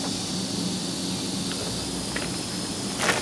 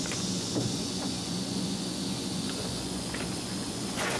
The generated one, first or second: second